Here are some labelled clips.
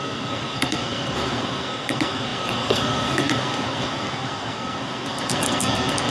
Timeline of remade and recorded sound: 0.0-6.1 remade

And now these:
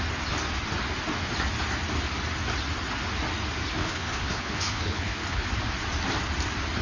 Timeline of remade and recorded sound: 0.0-3.8 recorded; 3.8-5.5 remade; 5.5-6.8 recorded

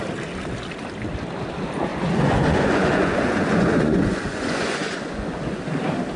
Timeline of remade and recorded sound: 0.0-1.9 recorded; 1.9-5.6 remade; 5.6-6.2 recorded